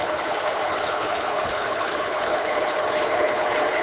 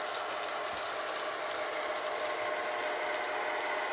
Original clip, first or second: second